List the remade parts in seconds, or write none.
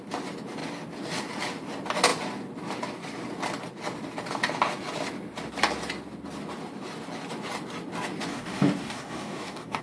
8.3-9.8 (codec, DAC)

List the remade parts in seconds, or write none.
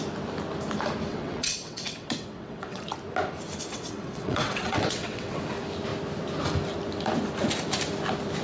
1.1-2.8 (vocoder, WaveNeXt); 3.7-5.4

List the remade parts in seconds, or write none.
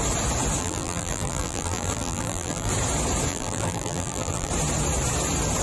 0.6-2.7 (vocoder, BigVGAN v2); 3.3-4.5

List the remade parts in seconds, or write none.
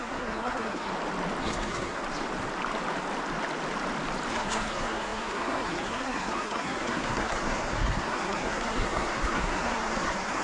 0.0-0.9 (codec, SNAC); 1.4-2.0; 4.3-10.4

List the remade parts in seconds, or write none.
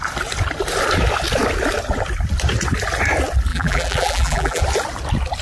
3.5-4.6 (vocoder, BigVGAN v2)